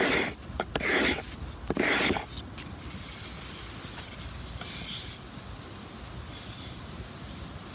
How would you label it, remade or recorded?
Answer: recorded